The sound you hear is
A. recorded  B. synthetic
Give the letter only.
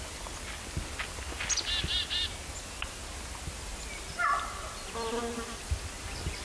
A